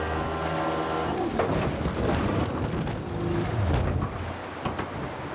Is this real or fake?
real